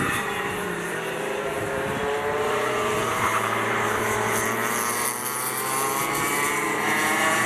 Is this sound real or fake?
fake